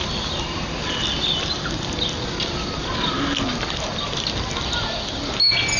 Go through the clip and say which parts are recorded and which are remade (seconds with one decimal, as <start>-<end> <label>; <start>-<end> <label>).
0.0-5.8 recorded